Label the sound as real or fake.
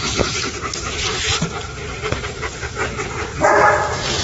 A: real